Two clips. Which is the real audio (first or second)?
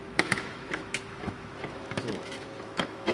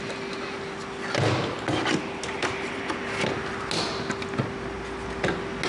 second